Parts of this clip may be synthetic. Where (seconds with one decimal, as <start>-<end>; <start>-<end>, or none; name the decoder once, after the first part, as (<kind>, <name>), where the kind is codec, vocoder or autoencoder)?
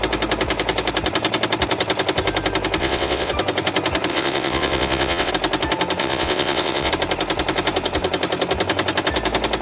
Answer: 2.8-3.3 (vocoder, WaveNeXt); 4.1-5.3; 6.0-6.9